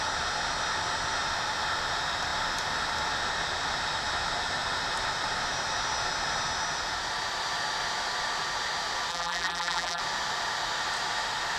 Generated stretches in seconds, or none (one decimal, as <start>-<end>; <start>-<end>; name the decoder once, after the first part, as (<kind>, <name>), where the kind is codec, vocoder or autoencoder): 9.1-10.0 (vocoder, BigVGAN v2)